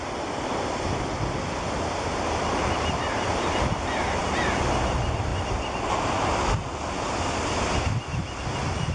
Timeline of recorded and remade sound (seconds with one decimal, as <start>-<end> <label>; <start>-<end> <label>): 0.0-8.9 recorded